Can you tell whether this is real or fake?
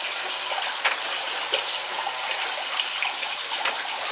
real